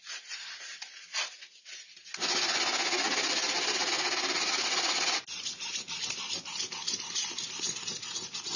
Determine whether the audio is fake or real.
real